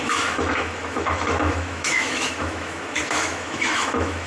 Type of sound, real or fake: fake